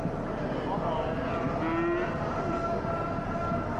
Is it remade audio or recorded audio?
recorded